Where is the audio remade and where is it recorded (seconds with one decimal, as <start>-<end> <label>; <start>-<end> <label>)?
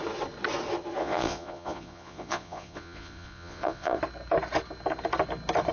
0.0-1.0 recorded; 1.0-4.0 remade; 4.0-5.7 recorded